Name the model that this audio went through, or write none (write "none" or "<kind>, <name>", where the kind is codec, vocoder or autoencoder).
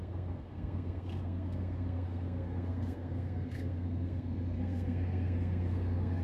codec, SNAC